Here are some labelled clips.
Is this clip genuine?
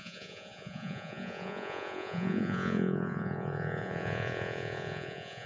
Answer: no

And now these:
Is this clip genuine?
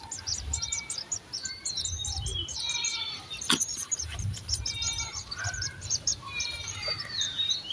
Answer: no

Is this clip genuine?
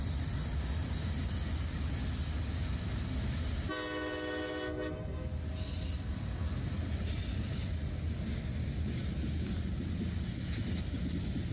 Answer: yes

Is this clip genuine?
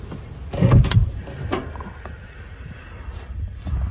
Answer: yes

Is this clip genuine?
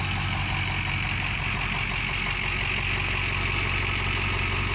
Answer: yes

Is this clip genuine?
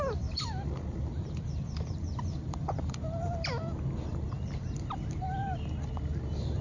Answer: no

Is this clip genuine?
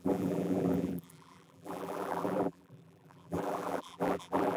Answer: no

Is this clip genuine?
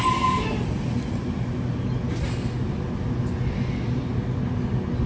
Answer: yes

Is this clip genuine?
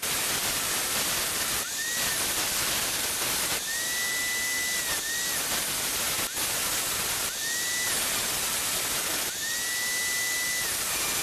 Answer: yes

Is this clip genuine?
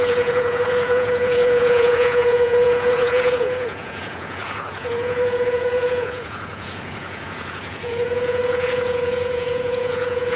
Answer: no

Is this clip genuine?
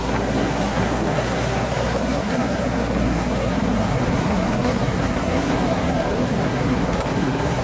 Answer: no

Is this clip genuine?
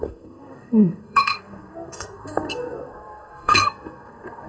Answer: no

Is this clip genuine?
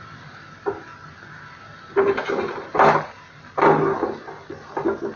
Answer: yes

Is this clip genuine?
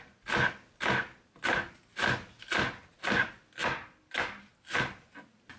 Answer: yes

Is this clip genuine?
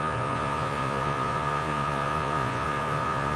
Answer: no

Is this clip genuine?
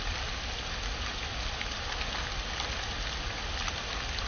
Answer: yes